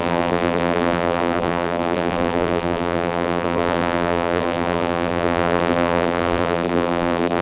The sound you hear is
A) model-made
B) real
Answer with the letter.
A